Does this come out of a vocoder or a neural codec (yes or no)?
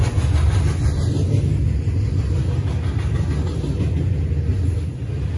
no